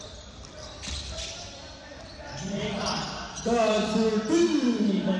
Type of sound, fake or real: fake